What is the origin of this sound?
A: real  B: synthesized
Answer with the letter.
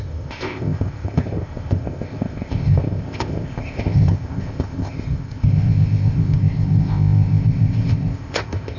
B